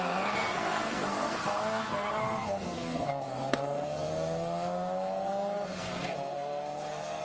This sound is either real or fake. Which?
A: fake